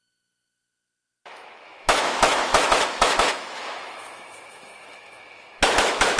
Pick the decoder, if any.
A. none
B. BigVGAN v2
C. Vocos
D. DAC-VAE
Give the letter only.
D